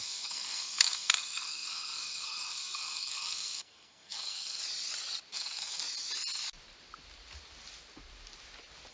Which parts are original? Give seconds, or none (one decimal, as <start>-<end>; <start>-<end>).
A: 4.6-5.3; 5.8-8.9